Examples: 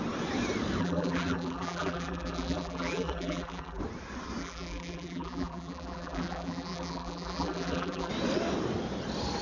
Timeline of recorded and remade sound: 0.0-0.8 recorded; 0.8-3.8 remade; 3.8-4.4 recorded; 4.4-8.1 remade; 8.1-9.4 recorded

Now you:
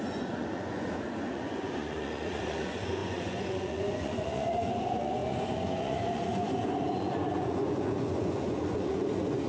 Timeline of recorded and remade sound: 0.0-9.5 remade

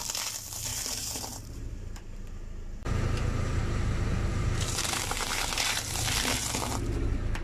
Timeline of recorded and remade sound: 0.0-0.7 recorded; 0.7-2.3 remade; 2.3-4.3 recorded; 4.3-6.0 remade; 6.0-7.4 recorded

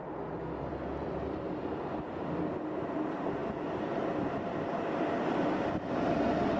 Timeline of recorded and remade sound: 0.0-0.7 recorded; 0.7-6.6 remade

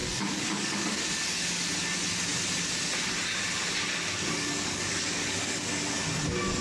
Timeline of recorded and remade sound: 0.0-1.0 remade; 1.0-3.9 recorded; 3.9-5.7 remade; 5.7-6.6 recorded

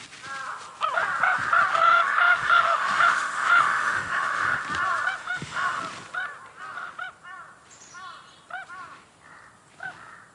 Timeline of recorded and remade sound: 0.0-1.7 recorded; 1.7-4.6 remade; 4.6-5.2 recorded; 5.2-5.8 remade; 5.8-10.3 recorded

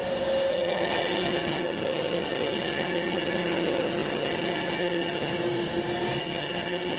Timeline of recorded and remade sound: 0.0-0.5 recorded; 0.5-5.3 remade; 5.3-6.2 recorded; 6.2-7.0 remade